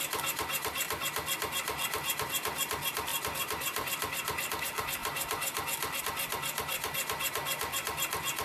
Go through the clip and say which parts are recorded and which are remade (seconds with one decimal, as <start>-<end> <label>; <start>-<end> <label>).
0.0-8.4 recorded